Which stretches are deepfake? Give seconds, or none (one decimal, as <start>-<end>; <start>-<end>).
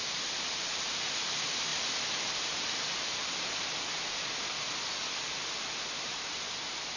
0.0-1.7; 5.9-7.0